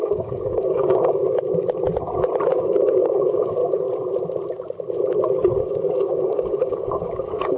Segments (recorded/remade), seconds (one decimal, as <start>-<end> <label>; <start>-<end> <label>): 0.0-1.2 remade; 1.2-2.6 recorded; 2.6-3.6 remade; 3.6-5.6 recorded; 5.6-7.6 remade